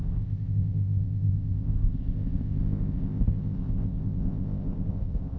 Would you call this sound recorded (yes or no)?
no